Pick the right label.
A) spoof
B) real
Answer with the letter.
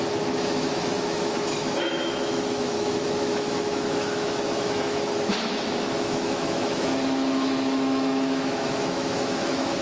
A